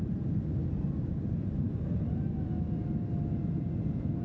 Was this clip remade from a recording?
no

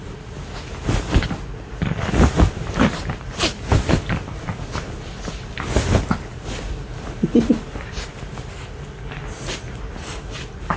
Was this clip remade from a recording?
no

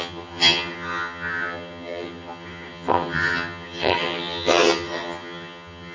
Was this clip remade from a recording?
yes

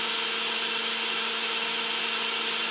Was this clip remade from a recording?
no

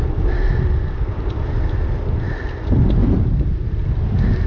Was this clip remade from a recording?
no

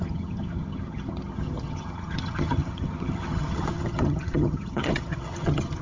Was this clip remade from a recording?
yes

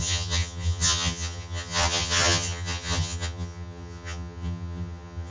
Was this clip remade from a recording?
yes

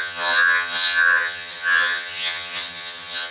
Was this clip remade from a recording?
yes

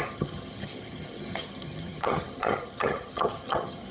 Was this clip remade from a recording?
yes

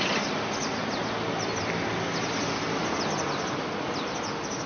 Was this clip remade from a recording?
no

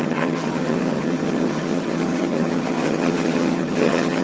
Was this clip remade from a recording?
yes